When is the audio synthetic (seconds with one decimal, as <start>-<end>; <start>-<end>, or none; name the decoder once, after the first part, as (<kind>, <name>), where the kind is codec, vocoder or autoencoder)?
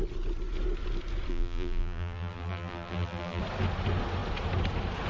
1.3-3.4 (vocoder, BigVGAN v2)